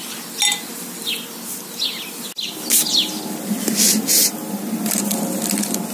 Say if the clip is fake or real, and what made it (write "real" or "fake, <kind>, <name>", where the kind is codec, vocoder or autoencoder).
real